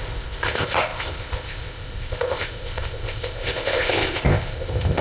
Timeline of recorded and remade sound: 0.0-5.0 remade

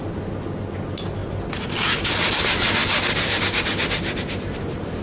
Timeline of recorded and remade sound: 0.0-5.0 recorded

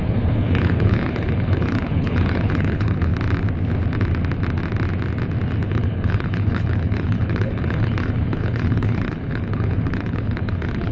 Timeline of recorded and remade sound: 0.0-3.1 remade; 3.1-5.6 recorded; 5.6-10.9 remade

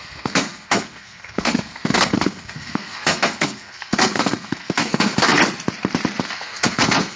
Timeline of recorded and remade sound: 0.0-5.4 remade; 5.4-6.2 recorded; 6.2-7.2 remade

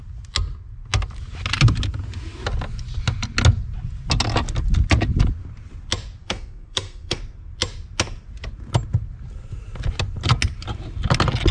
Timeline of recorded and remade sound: 0.0-6.2 recorded; 6.2-7.2 remade; 7.2-11.5 recorded

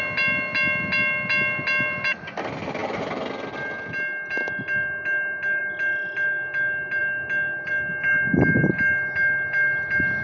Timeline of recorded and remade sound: 0.0-10.2 recorded

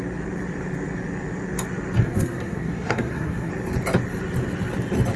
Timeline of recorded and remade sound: 0.0-2.0 recorded; 2.0-3.5 remade; 3.5-5.2 recorded